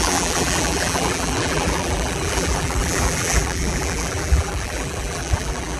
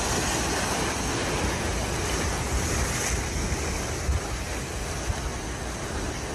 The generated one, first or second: first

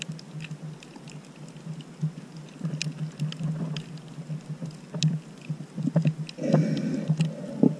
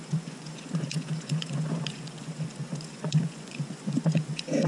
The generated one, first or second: second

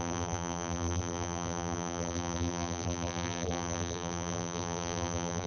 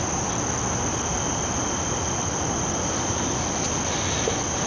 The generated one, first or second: first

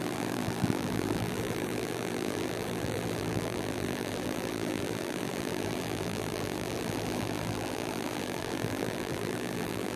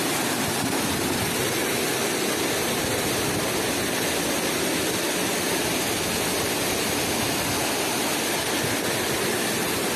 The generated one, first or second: first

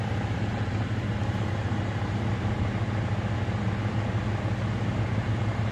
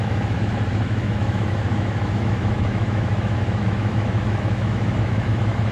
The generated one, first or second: second